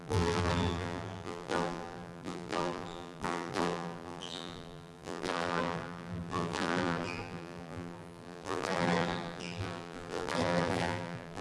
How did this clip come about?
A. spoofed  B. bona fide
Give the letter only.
A